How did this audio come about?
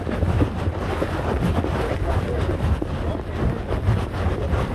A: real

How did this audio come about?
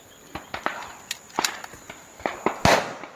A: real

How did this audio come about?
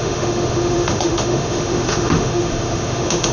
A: fake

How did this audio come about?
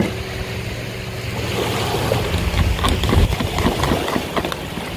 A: real